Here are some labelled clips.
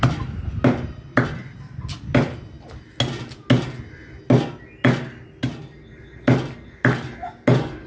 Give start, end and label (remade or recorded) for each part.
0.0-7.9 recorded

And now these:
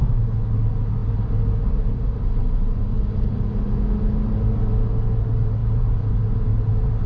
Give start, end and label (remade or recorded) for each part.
0.0-5.6 recorded; 5.6-6.1 remade; 6.1-7.1 recorded